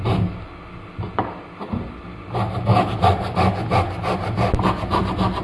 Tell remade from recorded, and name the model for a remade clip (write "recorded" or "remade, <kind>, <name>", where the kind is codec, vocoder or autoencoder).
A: recorded